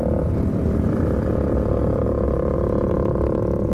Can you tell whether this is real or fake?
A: real